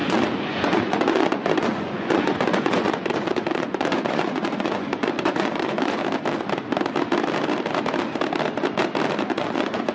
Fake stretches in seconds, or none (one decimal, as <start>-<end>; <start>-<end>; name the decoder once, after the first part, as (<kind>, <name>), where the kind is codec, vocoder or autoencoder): 0.0-6.0 (vocoder, Vocos); 9.2-9.9

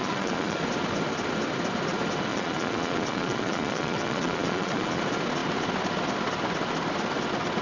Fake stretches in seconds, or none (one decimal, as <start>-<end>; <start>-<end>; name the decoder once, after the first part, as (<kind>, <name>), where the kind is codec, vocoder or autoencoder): 0.0-0.6 (vocoder, Vocos); 2.3-5.0

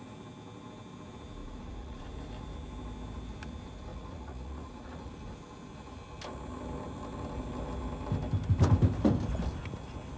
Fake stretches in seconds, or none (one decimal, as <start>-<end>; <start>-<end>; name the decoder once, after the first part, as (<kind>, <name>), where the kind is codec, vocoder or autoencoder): 1.4-2.1 (vocoder, Vocos); 3.9-5.1

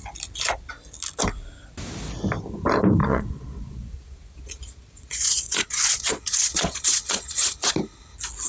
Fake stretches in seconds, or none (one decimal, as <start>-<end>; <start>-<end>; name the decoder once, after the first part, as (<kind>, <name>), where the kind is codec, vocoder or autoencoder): 3.0-7.7 (vocoder, Vocos)